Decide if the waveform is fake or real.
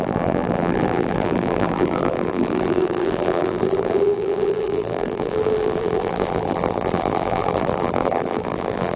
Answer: fake